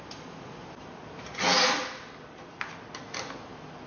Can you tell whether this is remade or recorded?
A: recorded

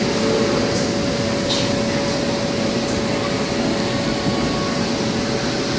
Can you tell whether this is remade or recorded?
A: recorded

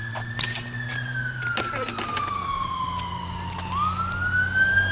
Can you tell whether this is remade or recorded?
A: recorded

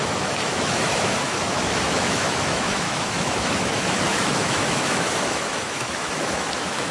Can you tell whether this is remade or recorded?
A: remade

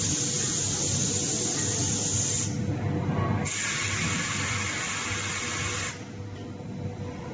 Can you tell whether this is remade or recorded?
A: recorded